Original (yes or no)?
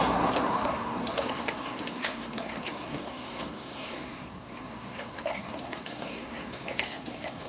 no